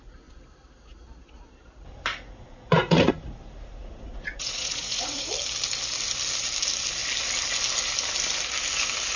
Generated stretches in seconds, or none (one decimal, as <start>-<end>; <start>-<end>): 2.1-3.1; 3.8-5.3